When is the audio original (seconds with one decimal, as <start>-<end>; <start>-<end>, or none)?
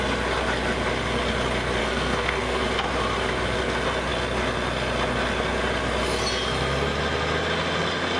0.0-1.8; 2.6-8.2